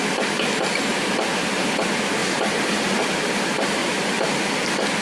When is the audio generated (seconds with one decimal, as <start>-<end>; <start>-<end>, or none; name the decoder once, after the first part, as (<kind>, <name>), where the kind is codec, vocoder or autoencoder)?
0.9-1.8 (vocoder, BigVGAN v2); 2.2-3.0; 3.8-4.5